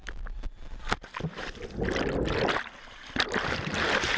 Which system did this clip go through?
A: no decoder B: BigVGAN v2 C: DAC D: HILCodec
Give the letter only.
A